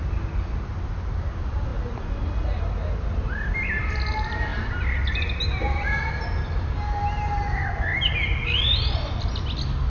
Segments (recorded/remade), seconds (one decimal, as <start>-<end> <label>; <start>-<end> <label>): 0.0-9.9 recorded